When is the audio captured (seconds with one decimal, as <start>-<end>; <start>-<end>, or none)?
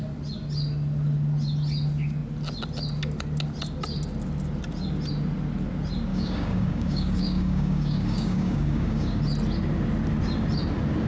0.0-6.1; 9.2-11.1